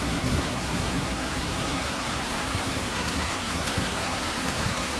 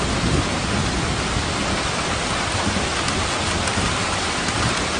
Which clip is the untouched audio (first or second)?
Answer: second